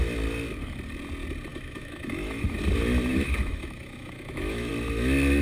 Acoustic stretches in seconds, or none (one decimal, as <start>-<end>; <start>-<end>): 0.0-1.5; 2.6-3.1; 4.7-5.4

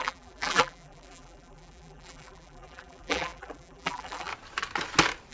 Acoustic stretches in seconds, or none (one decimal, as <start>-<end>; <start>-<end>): 4.3-5.3

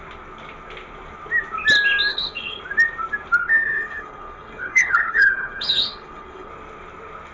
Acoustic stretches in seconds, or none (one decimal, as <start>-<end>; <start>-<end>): 0.0-2.1; 2.6-3.4; 6.5-7.3

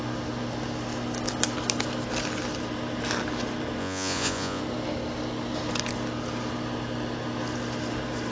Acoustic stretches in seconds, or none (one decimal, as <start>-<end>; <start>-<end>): 0.0-3.8; 4.6-8.3

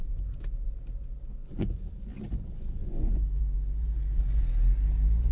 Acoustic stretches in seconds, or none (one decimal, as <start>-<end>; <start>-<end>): 0.0-1.4; 1.9-2.8; 4.4-5.3

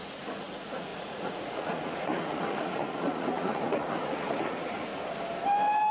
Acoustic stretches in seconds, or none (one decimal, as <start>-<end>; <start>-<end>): 4.9-5.9

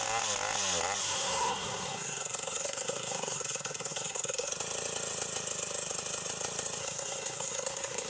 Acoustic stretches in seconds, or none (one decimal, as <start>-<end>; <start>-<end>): 0.0-1.0; 4.5-6.8